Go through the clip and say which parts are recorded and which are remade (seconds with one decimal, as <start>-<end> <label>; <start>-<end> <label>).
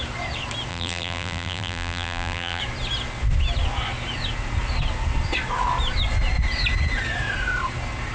0.0-0.7 recorded; 0.7-2.6 remade; 2.6-8.1 recorded